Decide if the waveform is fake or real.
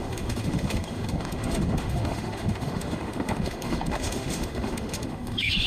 fake